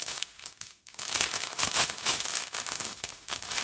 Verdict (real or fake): fake